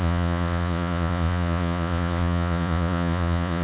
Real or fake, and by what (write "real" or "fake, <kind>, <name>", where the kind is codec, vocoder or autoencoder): fake, vocoder, Vocos